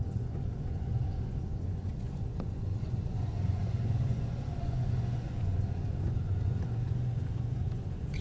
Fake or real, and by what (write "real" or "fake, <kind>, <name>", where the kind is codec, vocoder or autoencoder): fake, vocoder, Vocos